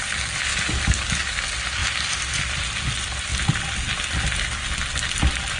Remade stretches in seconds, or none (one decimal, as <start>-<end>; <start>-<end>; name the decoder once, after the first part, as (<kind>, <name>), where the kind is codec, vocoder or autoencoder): 0.5-1.4 (codec, DAC)